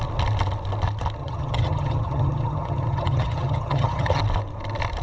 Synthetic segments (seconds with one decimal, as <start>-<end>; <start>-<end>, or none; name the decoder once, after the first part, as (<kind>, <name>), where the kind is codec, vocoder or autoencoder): 1.2-4.2 (vocoder, HiFi-GAN)